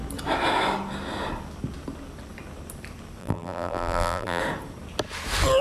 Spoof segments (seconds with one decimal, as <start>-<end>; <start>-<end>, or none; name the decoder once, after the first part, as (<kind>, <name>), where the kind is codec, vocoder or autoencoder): 3.2-4.4 (vocoder, BigVGAN v2)